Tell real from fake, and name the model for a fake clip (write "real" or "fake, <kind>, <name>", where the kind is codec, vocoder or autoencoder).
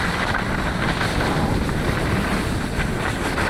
real